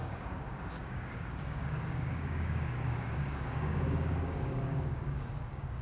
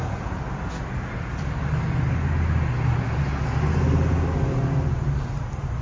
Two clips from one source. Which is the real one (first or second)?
second